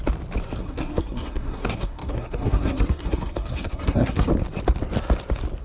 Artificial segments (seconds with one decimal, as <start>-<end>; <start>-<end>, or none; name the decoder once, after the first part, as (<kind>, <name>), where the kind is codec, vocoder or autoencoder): 0.6-4.3 (codec, SNAC)